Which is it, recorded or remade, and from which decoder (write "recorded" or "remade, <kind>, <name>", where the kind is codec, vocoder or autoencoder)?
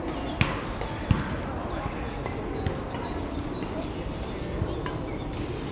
recorded